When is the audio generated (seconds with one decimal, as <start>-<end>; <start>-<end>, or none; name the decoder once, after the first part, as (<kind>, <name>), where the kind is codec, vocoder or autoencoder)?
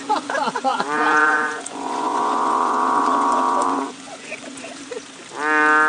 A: 0.0-4.7 (vocoder, Vocos)